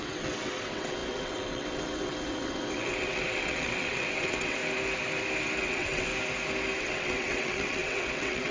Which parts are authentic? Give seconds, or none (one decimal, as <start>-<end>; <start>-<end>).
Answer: 4.6-5.6; 6.1-6.8